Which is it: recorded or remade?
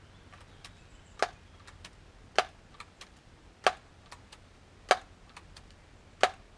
recorded